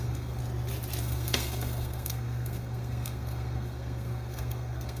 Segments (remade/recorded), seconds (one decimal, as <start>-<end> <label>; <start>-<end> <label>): 0.0-0.4 remade; 0.4-1.0 recorded; 1.0-5.0 remade